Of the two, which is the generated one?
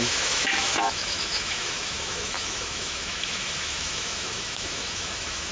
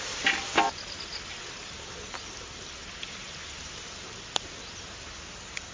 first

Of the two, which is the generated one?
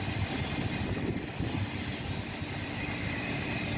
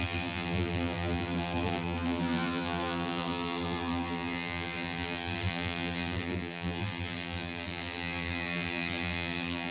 second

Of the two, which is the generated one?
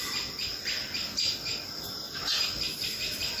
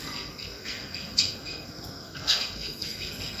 second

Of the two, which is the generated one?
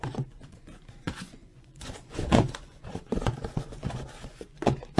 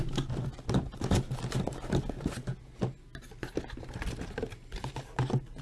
first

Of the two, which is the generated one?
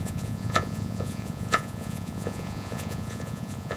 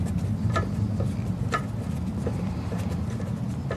first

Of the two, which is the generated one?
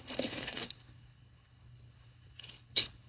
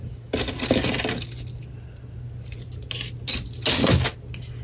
first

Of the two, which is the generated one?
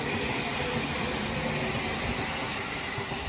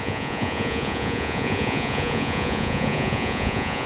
second